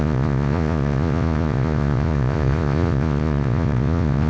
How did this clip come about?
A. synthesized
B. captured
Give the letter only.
A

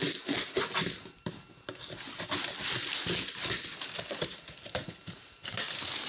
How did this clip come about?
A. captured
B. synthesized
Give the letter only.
A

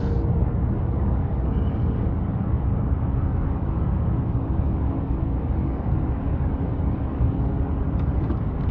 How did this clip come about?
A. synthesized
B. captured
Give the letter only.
A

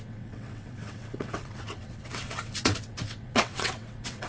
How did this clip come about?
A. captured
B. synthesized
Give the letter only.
B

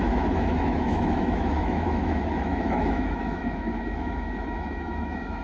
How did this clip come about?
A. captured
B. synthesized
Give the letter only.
B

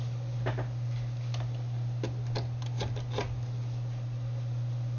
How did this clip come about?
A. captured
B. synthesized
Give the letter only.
A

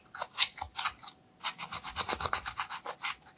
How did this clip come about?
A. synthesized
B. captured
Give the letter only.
B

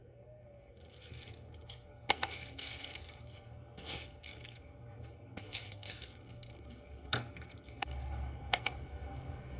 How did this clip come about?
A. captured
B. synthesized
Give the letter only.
B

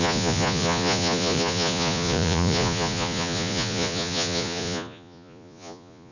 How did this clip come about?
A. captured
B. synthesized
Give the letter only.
B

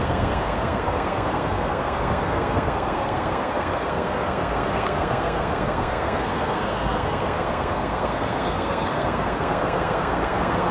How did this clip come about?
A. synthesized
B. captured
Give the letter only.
A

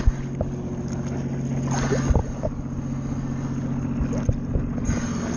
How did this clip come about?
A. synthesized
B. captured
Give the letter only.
B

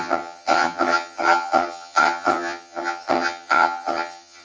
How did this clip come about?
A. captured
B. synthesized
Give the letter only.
B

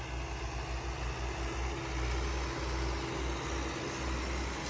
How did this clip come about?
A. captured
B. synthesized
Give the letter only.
A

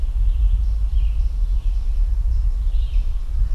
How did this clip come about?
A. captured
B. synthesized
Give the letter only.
B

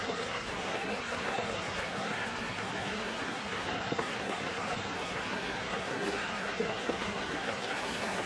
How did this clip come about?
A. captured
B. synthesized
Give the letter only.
B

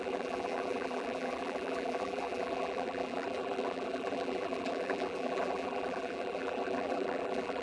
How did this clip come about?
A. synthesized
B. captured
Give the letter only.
A